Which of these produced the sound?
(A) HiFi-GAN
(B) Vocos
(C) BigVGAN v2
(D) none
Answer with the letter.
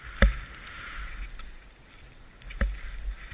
D